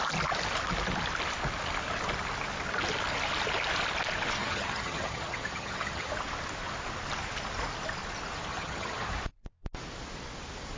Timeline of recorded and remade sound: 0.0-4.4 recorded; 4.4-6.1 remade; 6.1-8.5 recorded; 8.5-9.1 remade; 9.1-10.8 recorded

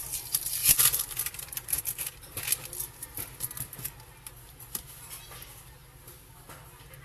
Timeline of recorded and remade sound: 0.0-0.6 recorded; 0.6-2.4 remade; 2.4-7.0 recorded

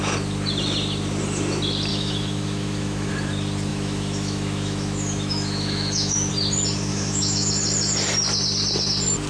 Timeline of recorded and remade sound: 0.0-1.9 recorded; 1.9-3.1 remade; 3.1-3.7 recorded; 3.7-6.3 remade; 6.3-6.9 recorded; 6.9-7.5 remade; 7.5-9.3 recorded

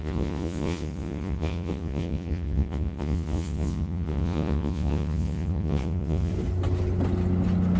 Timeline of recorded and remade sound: 0.0-6.3 remade; 6.3-7.8 recorded

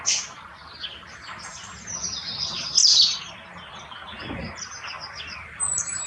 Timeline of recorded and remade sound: 0.0-6.1 recorded

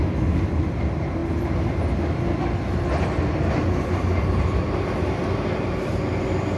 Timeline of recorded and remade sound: 0.0-6.6 recorded

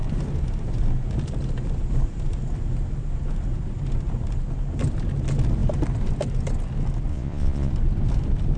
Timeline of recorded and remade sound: 0.0-7.1 recorded; 7.1-7.7 remade; 7.7-8.6 recorded